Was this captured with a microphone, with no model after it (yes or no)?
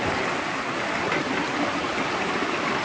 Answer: yes